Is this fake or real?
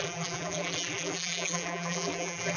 fake